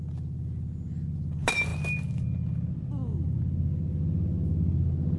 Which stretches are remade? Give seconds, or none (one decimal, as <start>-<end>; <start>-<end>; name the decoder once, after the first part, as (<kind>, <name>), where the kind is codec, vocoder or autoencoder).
none